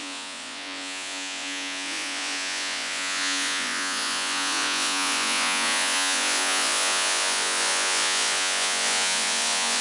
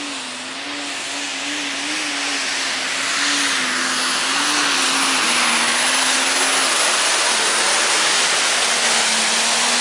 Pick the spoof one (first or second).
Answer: first